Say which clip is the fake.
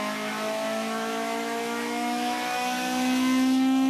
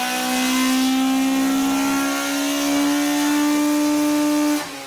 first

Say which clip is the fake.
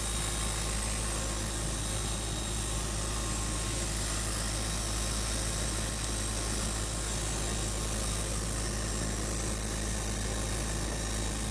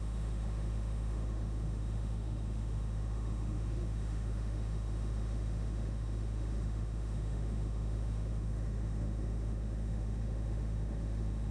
second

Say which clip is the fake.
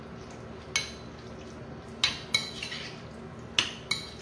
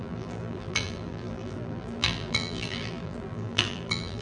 second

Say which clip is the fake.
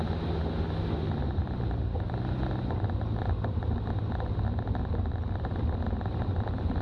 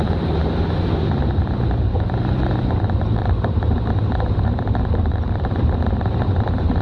second